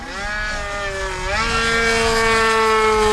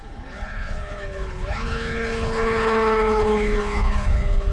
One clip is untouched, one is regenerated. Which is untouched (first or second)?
first